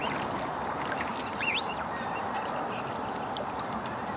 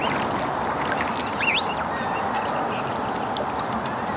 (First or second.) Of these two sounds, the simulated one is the first